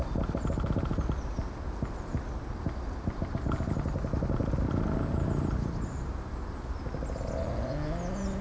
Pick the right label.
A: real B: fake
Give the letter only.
A